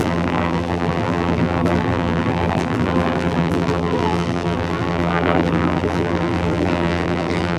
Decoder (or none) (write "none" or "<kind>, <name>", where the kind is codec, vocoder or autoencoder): vocoder, BigVGAN v2